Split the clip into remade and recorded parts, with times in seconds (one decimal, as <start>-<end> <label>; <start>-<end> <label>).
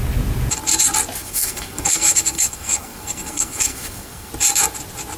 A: 0.0-1.2 recorded; 1.2-4.3 remade; 4.3-5.2 recorded